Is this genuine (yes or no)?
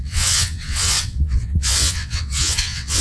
no